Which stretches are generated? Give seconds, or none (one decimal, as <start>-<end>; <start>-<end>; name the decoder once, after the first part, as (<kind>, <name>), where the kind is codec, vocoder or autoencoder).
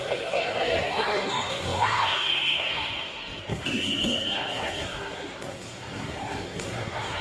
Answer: 0.0-7.2 (codec, SNAC)